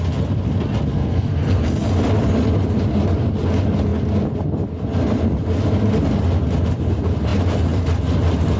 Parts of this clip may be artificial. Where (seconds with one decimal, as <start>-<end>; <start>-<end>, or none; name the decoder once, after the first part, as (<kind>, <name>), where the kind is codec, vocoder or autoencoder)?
0.9-1.7 (codec, SNAC)